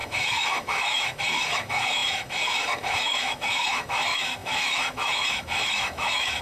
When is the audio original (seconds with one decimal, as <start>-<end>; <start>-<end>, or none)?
none